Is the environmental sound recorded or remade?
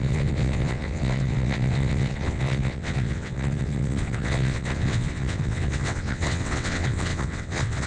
remade